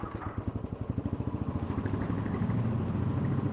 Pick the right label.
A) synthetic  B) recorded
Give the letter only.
B